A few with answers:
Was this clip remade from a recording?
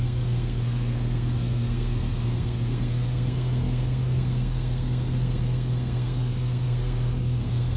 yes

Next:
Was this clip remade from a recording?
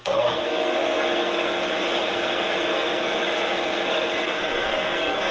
yes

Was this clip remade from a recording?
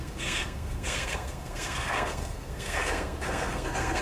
yes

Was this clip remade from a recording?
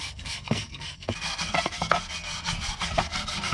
yes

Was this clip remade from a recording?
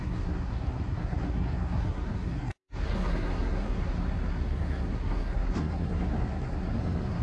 yes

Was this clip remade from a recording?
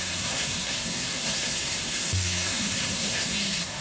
yes